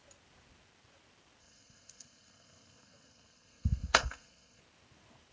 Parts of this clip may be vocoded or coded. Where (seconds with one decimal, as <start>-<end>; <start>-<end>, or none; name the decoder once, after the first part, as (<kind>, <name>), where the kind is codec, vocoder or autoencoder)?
1.4-4.6 (codec, SNAC)